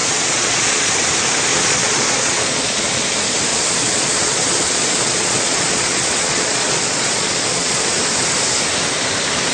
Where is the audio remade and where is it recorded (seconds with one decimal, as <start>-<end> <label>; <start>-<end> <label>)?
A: 0.0-0.9 remade; 0.9-1.5 recorded; 1.5-3.0 remade; 3.0-3.5 recorded; 3.5-7.9 remade; 7.9-9.5 recorded